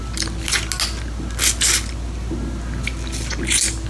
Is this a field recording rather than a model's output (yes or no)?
yes